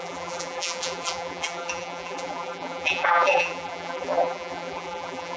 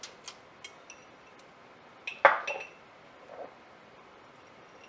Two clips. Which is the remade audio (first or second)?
first